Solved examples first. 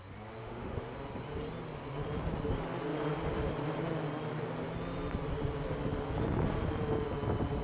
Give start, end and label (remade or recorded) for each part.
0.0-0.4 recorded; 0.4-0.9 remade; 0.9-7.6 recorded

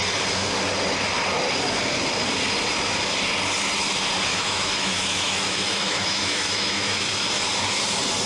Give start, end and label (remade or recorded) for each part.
0.0-4.3 recorded; 4.3-7.3 remade; 7.3-8.3 recorded

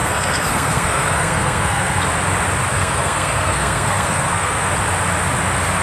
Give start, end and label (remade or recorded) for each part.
0.0-2.0 remade; 2.0-2.7 recorded; 2.7-4.7 remade; 4.7-5.8 recorded

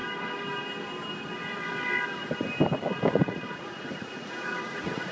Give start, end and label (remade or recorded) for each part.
0.0-3.1 recorded; 3.1-5.1 remade